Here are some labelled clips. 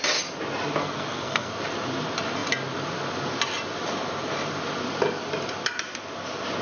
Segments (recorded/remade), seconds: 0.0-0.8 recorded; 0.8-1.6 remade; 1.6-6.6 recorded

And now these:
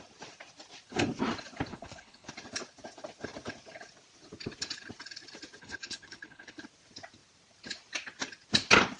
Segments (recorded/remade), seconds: 0.0-1.7 recorded; 1.7-2.3 remade; 2.3-5.6 recorded; 5.6-6.6 remade; 6.6-9.0 recorded